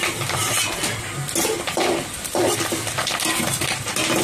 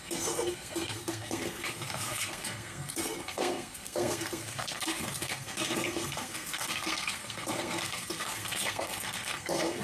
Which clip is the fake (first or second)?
second